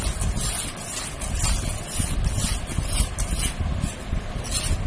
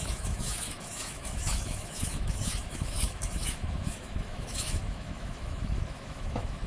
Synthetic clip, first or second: second